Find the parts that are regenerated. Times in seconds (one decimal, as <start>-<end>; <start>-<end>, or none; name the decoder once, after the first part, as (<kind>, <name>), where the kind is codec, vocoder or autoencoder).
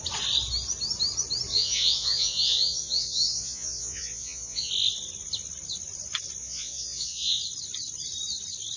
1.5-4.7 (vocoder, Vocos); 6.4-7.4